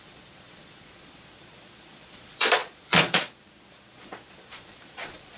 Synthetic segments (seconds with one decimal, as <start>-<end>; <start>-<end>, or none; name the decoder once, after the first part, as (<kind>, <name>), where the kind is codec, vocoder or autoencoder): 0.0-5.4 (vocoder, Vocos)